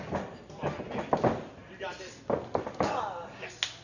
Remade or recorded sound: recorded